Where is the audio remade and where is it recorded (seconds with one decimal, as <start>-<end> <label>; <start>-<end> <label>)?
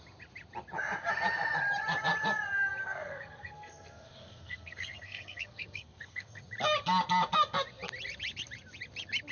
0.0-2.8 recorded; 2.8-6.4 remade; 6.4-9.3 recorded